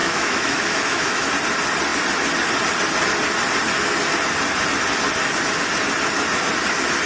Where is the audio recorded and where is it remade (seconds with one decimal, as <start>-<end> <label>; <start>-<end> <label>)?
0.0-1.3 remade; 1.3-7.1 recorded